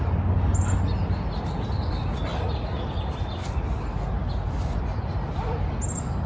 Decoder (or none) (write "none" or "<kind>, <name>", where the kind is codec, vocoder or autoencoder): none